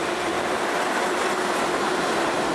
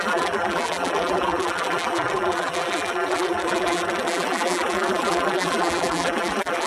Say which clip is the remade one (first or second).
second